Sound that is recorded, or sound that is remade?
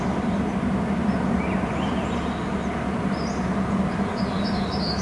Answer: recorded